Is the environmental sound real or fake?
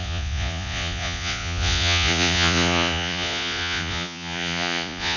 fake